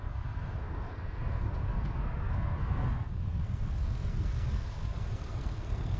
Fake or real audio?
fake